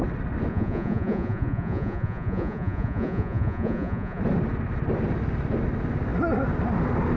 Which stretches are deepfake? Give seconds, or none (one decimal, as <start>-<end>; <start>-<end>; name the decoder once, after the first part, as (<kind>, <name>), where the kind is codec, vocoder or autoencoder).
0.5-4.2 (vocoder, Vocos)